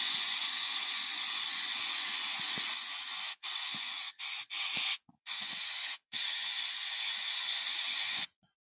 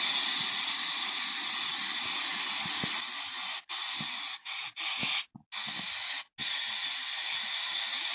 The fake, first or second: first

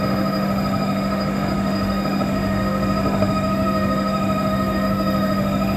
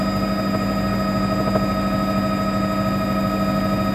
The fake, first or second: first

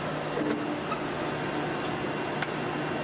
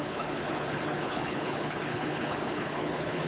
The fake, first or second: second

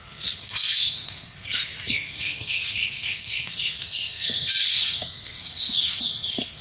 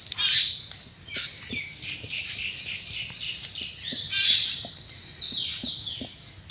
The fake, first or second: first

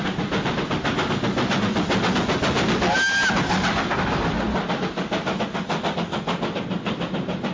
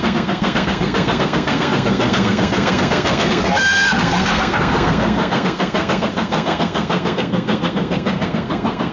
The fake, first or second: second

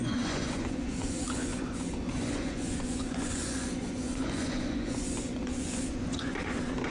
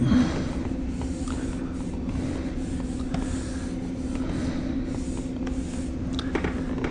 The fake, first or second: first